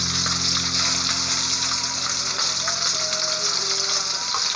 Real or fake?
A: real